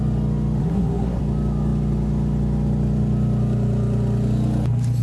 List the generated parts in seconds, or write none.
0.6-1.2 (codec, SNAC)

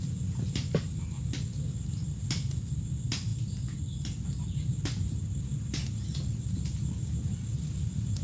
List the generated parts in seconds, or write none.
none